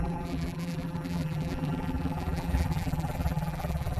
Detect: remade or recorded remade